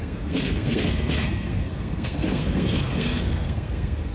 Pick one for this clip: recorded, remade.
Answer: remade